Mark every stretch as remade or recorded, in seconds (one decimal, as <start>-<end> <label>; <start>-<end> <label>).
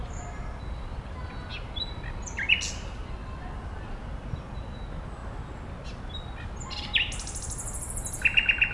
0.0-8.7 recorded